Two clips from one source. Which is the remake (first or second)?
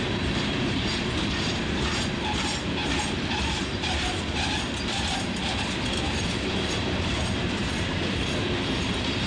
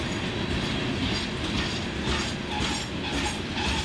first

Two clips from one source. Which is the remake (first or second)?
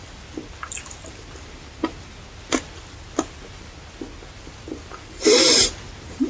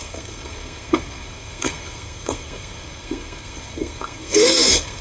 second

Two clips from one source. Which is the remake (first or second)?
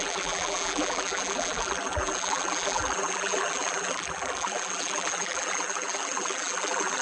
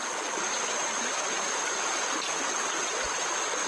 first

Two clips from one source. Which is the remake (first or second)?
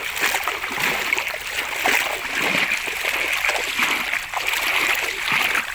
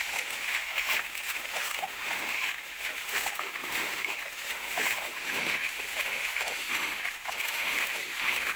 second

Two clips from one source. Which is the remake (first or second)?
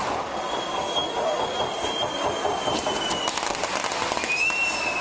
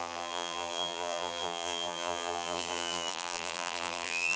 second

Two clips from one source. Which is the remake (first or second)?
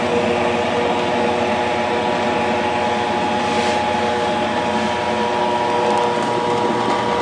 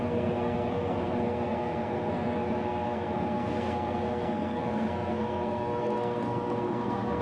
second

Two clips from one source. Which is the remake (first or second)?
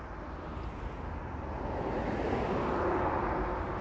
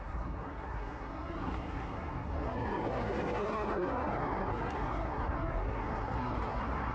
second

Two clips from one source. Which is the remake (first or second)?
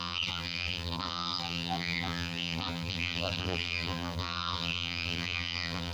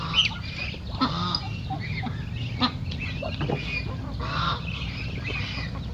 first